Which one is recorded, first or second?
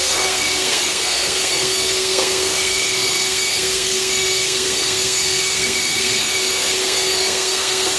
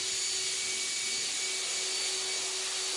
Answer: second